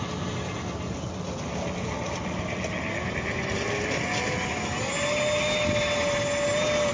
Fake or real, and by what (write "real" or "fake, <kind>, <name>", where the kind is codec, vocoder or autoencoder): real